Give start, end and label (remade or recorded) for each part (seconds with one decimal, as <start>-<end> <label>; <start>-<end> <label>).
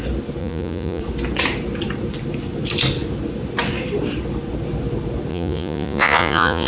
0.0-0.4 recorded; 0.4-1.0 remade; 1.0-5.3 recorded; 5.3-6.7 remade